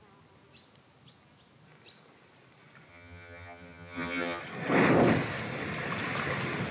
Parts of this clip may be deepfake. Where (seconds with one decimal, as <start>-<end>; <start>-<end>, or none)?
2.9-4.4

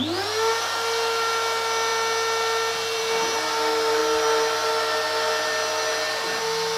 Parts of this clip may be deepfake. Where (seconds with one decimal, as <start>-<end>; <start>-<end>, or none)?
none

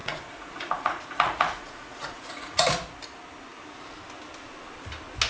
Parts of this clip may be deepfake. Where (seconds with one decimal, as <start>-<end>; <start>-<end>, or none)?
0.0-2.7

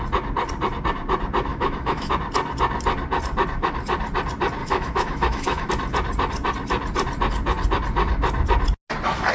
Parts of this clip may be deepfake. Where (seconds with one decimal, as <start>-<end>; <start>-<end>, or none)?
1.5-2.1; 4.6-5.7

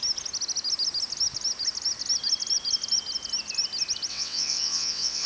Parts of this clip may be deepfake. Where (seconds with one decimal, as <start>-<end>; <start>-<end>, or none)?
4.1-5.3

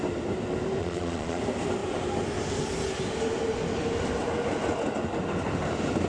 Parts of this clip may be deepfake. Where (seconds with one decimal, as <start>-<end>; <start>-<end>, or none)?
0.8-1.4

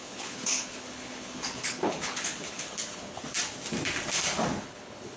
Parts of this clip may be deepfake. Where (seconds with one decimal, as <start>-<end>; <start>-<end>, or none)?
0.0-3.2; 4.6-5.2

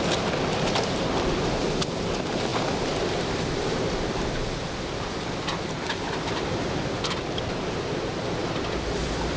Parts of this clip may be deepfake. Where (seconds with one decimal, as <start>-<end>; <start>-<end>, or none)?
none